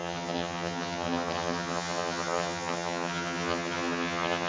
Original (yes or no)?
no